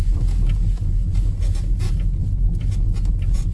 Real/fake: real